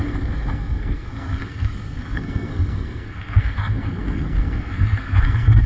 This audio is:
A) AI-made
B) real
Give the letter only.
A